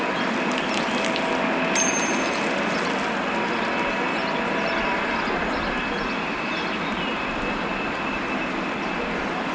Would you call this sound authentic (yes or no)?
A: yes